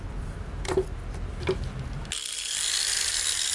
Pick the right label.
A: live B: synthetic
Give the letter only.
A